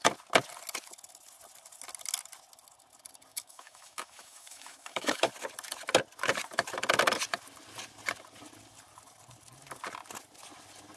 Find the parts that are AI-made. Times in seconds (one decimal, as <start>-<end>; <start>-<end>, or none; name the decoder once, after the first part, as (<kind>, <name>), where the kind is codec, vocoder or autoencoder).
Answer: 3.3-5.3 (autoencoder, DAC-VAE)